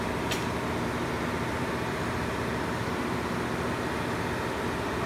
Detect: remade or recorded recorded